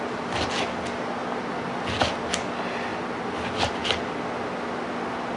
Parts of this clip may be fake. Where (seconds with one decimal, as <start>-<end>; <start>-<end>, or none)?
none